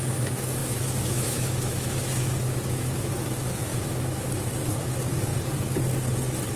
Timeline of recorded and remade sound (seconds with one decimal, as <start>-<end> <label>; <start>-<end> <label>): 0.0-5.3 remade; 5.3-6.6 recorded